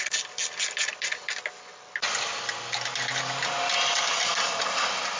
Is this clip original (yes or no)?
yes